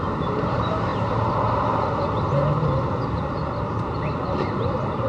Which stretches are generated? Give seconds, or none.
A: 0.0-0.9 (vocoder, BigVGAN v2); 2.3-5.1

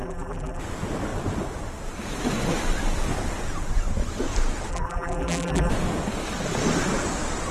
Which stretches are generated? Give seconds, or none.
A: 0.0-0.6 (vocoder, BigVGAN v2); 4.7-5.7

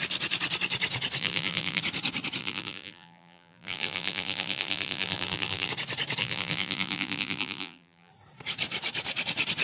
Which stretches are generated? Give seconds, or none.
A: 1.2-1.8 (vocoder, BigVGAN v2); 2.4-5.7; 6.2-8.1

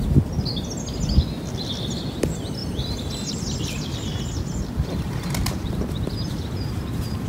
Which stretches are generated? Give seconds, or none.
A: 5.6-7.3 (vocoder, BigVGAN v2)

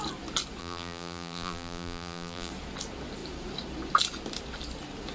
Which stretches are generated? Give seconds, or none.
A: 0.6-2.5 (vocoder, BigVGAN v2)